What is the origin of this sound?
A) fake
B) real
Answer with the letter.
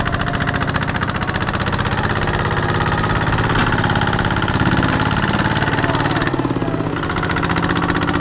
B